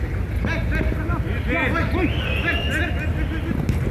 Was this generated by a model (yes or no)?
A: no